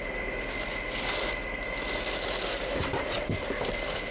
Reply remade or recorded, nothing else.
recorded